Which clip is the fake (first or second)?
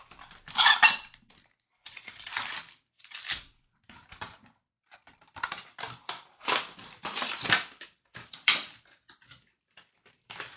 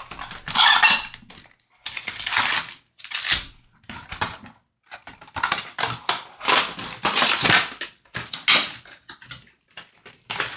first